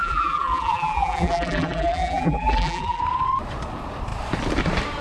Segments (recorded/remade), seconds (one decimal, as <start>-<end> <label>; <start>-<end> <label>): 0.0-3.0 remade; 3.0-5.0 recorded